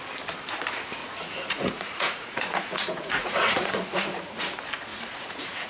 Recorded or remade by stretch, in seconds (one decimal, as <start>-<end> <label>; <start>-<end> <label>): 0.0-1.0 recorded; 1.0-4.4 remade; 4.4-4.9 recorded; 4.9-5.7 remade